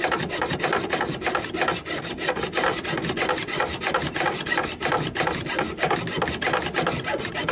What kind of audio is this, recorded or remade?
recorded